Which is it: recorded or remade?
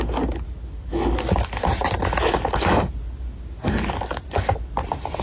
recorded